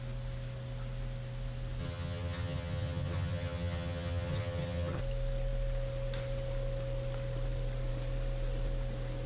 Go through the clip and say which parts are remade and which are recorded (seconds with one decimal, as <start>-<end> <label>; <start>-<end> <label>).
0.0-1.8 recorded; 1.8-5.0 remade; 5.0-9.3 recorded